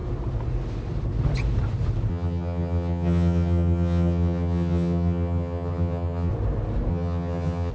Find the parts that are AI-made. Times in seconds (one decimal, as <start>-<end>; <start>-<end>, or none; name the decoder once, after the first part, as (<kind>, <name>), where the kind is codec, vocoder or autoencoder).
2.1-6.3 (vocoder, HiFi-GAN); 6.9-7.7

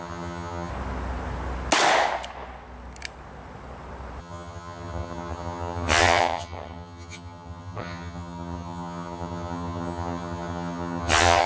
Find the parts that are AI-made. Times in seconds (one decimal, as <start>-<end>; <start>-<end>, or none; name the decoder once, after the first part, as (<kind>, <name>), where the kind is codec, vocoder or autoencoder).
0.0-0.7 (vocoder, HiFi-GAN); 4.2-11.5